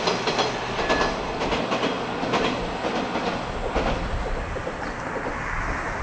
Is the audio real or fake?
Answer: real